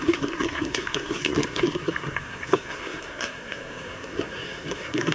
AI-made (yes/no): yes